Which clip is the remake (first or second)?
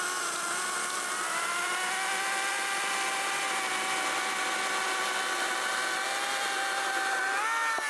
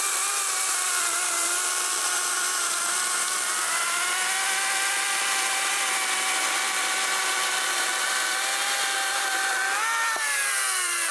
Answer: second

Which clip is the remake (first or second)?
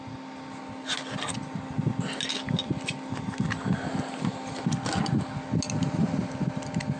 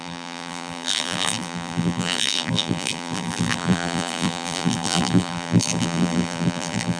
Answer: second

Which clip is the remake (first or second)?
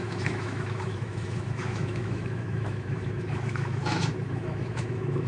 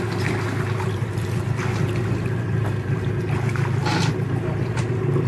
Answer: first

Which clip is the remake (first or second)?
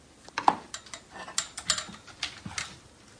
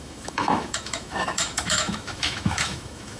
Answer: second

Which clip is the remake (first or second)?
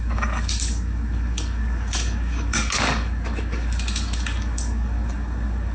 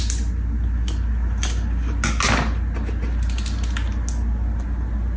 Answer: first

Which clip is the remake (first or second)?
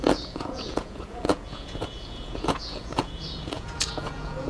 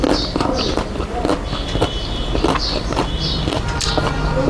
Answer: first